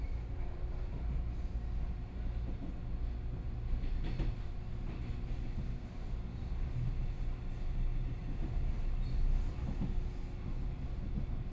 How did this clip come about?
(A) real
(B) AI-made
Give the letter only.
A